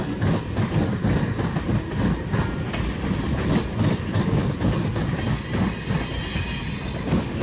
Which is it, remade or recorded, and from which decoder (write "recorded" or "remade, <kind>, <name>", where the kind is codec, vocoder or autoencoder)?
recorded